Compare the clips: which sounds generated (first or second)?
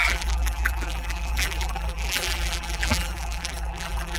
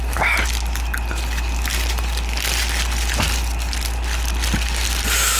first